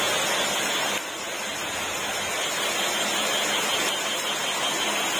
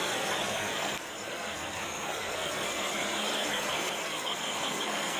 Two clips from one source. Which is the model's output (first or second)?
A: second